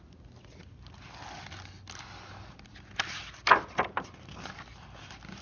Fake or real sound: real